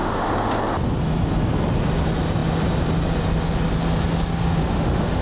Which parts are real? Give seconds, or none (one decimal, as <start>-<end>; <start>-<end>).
0.0-4.6